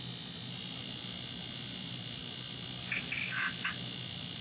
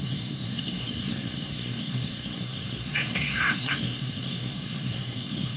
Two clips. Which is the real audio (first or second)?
first